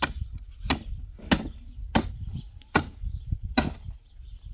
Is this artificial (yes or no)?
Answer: no